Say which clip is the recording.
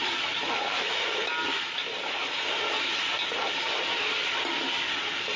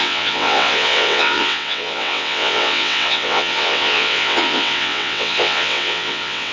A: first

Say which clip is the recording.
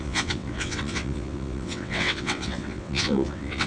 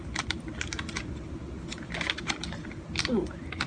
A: second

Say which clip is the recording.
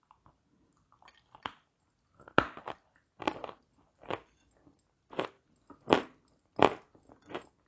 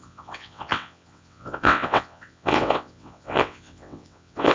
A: first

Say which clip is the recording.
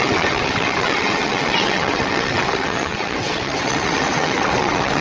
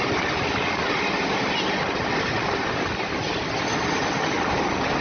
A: second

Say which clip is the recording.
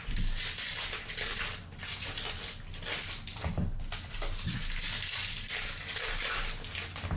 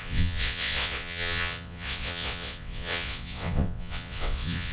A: first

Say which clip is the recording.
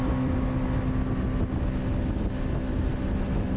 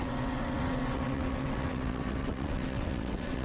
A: first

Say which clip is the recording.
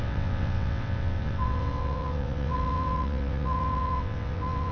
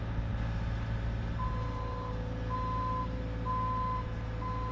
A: second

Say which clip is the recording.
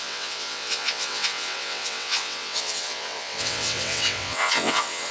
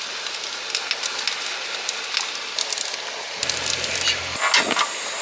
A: second